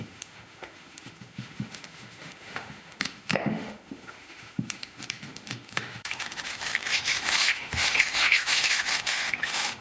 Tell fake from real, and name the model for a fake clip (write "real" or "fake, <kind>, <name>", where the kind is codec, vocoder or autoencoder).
fake, autoencoder, DAC-VAE